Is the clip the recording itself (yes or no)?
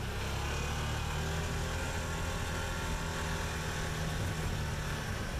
yes